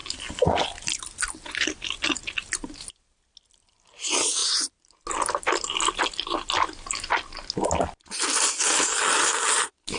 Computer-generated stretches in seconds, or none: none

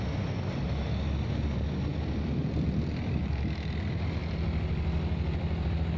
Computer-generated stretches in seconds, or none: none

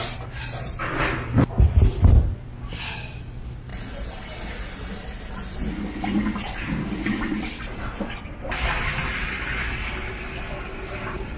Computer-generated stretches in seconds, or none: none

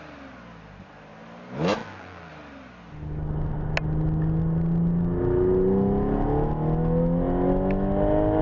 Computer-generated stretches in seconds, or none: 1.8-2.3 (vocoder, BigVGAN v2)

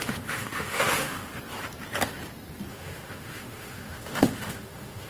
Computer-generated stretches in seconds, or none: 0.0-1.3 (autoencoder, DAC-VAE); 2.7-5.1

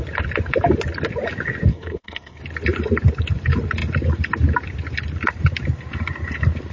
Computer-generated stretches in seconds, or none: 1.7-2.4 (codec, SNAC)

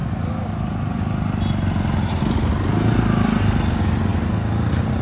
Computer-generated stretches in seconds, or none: none